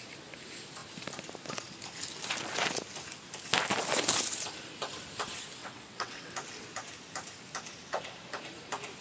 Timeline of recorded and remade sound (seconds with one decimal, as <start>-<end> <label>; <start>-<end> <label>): 0.0-5.6 recorded; 5.6-6.3 remade; 6.3-9.0 recorded